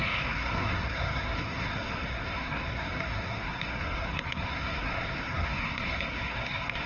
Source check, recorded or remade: remade